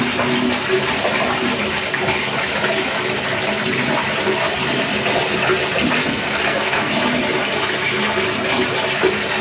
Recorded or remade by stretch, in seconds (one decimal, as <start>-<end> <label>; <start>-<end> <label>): 0.0-6.0 recorded; 6.0-6.9 remade; 6.9-9.4 recorded